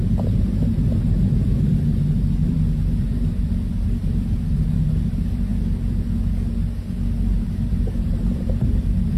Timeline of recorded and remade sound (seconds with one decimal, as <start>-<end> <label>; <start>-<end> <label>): 0.0-5.5 remade; 5.5-7.4 recorded; 7.4-9.2 remade